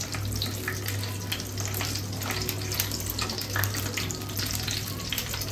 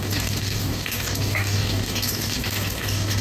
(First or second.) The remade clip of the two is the second